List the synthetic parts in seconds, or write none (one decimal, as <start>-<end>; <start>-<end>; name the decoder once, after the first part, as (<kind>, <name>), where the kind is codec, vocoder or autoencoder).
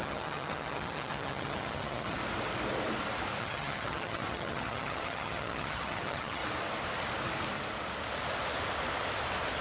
0.0-2.2 (vocoder, HiFi-GAN); 3.4-6.4